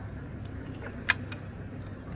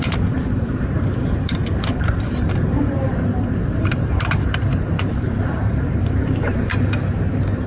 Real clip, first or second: first